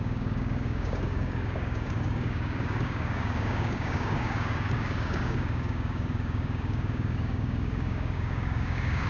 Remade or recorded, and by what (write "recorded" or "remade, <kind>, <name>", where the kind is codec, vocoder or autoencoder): remade, codec, DAC